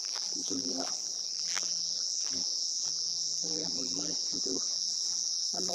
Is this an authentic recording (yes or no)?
no